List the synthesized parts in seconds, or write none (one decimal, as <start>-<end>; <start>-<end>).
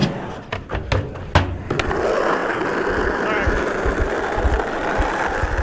none